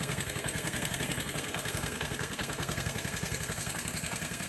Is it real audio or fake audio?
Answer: fake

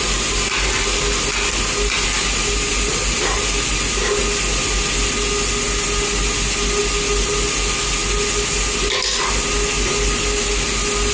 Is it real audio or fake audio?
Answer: real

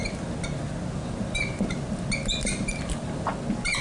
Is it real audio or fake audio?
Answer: real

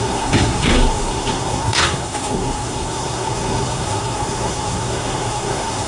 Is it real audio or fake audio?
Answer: fake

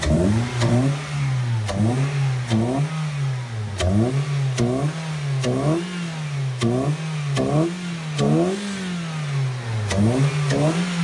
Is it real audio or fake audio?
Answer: real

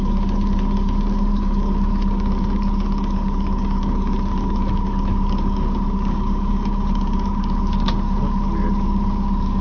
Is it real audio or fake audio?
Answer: fake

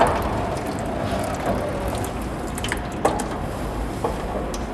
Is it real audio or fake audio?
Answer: real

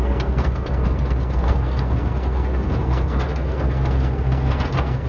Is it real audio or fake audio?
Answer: fake